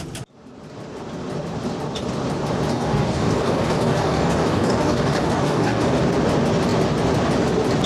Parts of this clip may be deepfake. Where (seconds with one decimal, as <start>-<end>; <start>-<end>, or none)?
2.7-6.0

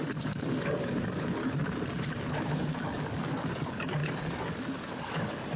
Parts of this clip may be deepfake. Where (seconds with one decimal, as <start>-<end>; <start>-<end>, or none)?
0.0-1.4; 2.5-5.6

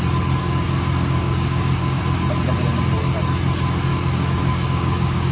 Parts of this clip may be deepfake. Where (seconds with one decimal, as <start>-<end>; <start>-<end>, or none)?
0.4-2.0; 3.9-5.3

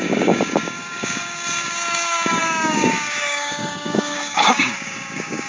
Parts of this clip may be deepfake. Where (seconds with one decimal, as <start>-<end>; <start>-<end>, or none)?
0.0-5.5

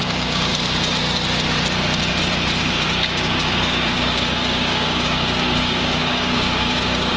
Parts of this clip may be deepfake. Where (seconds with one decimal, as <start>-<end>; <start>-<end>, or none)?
0.0-0.5; 2.6-7.2

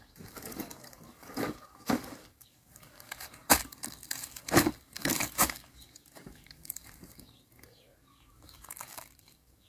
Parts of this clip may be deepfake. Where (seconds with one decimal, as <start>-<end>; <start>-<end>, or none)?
0.0-9.7

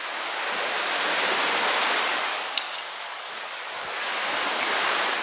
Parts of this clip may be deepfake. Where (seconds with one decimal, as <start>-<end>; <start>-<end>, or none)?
2.1-3.6